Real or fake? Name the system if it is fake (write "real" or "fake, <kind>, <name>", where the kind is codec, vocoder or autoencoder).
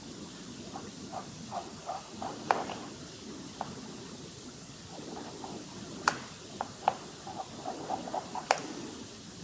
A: real